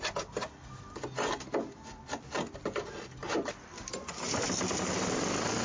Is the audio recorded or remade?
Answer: recorded